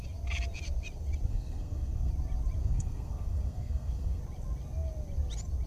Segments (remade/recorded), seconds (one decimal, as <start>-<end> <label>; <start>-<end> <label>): 0.0-1.3 recorded; 1.3-2.1 remade; 2.1-2.6 recorded; 2.6-4.2 remade; 4.2-5.7 recorded